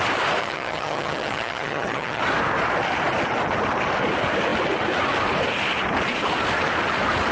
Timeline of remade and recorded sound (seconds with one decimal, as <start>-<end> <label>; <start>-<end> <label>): 0.0-0.4 recorded; 0.4-2.2 remade; 2.2-7.3 recorded